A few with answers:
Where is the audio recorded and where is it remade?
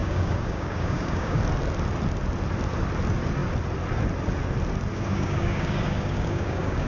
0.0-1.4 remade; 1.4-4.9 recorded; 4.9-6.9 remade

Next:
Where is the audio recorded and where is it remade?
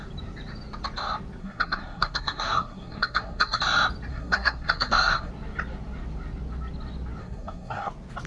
0.0-1.4 recorded; 1.4-3.6 remade; 3.6-4.1 recorded; 4.1-5.3 remade; 5.3-7.2 recorded; 7.2-7.9 remade; 7.9-8.3 recorded